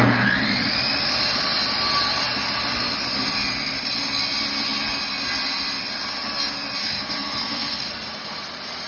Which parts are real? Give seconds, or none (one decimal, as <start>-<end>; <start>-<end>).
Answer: 0.0-6.8; 7.9-8.9